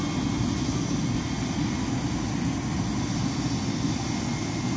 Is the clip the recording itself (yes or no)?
yes